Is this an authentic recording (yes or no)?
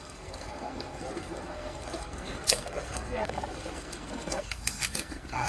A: no